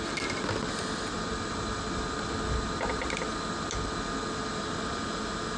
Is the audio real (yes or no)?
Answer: yes